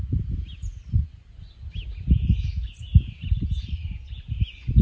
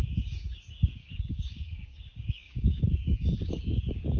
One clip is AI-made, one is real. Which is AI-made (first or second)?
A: second